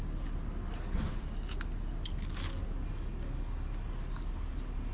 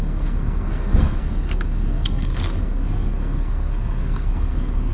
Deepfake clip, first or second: second